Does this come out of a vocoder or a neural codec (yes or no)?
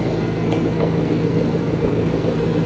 yes